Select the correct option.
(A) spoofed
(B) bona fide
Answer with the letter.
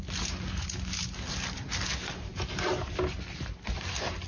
B